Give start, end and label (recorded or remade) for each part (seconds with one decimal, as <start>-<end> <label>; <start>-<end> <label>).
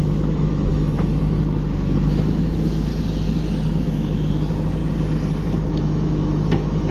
0.0-2.9 remade; 2.9-3.7 recorded; 3.7-4.8 remade; 4.8-5.7 recorded; 5.7-6.9 remade